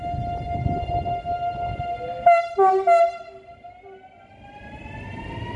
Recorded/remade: recorded